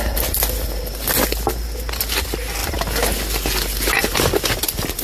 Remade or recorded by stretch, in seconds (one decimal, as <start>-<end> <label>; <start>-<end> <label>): 0.0-5.0 recorded